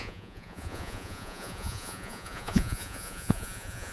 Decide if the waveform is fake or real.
fake